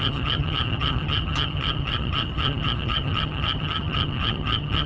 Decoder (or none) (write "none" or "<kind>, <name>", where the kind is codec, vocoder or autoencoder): vocoder, HiFi-GAN